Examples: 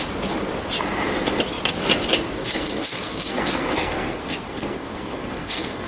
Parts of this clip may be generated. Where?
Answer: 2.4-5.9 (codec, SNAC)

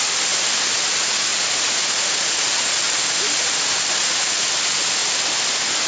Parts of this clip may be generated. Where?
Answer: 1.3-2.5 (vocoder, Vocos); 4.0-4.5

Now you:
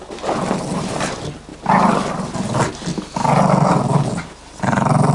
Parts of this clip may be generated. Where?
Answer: none

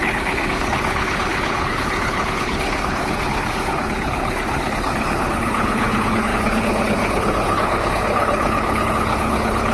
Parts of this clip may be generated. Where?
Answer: 0.0-9.7 (codec, HILCodec)